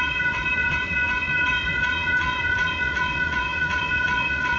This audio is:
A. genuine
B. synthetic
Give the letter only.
B